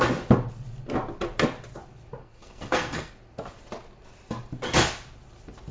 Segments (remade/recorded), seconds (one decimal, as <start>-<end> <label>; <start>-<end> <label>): 0.0-2.2 recorded; 2.2-3.1 remade; 3.1-5.7 recorded

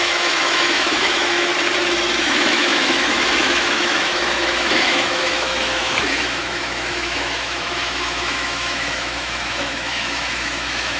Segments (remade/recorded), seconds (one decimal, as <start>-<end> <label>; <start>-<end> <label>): 0.0-1.5 remade; 1.5-2.2 recorded; 2.2-11.0 remade

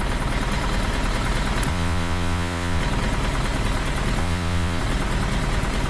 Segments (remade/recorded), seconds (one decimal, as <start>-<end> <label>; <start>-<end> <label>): 0.0-1.7 recorded; 1.7-2.8 remade; 2.8-4.2 recorded; 4.2-4.8 remade; 4.8-5.9 recorded

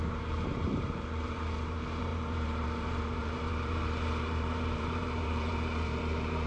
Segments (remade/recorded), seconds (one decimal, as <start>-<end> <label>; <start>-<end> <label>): 0.0-6.5 remade

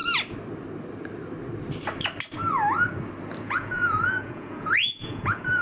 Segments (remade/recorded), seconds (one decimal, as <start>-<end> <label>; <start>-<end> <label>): 0.0-3.4 recorded; 3.4-5.6 remade

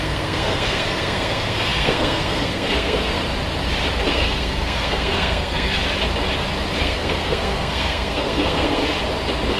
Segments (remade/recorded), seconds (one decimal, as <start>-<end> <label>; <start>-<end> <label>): 0.0-3.2 remade; 3.2-4.1 recorded; 4.1-5.8 remade; 5.8-6.8 recorded; 6.8-8.8 remade; 8.8-9.6 recorded

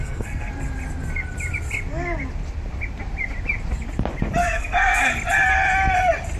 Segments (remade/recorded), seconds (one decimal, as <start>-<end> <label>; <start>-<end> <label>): 0.0-0.5 remade; 0.5-4.4 recorded; 4.4-5.1 remade; 5.1-6.4 recorded

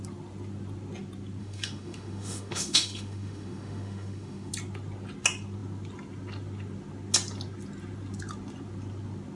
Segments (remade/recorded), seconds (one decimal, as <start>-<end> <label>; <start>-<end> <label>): 0.0-1.4 recorded; 1.4-4.5 remade; 4.5-9.4 recorded